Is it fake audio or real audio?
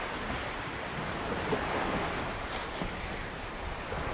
real